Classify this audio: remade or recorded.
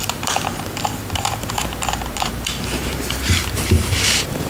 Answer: remade